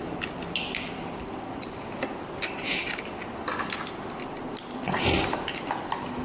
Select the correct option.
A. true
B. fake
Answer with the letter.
A